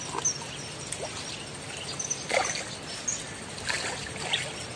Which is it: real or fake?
real